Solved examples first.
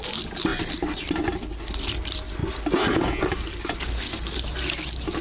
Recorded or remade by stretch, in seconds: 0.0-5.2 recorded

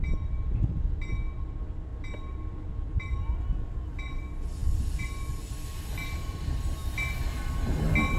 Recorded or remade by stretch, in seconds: 0.0-8.2 recorded

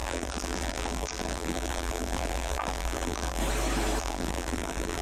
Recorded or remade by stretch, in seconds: 0.0-3.4 remade; 3.4-4.0 recorded; 4.0-5.0 remade

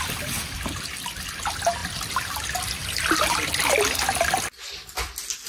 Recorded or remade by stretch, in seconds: 0.0-5.5 recorded

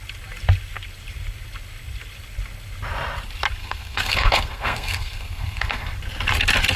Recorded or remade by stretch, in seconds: 0.0-3.6 recorded; 3.6-5.9 remade; 5.9-6.8 recorded

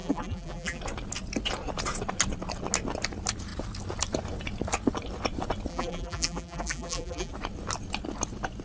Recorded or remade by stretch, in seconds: 0.0-0.8 remade; 0.8-5.7 recorded; 5.7-7.3 remade; 7.3-8.6 recorded

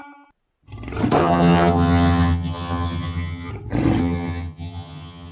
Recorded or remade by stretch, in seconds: 0.0-1.2 recorded; 1.2-3.5 remade; 3.5-4.0 recorded; 4.0-5.3 remade

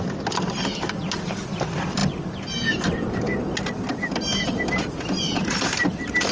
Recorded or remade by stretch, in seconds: 0.0-6.3 recorded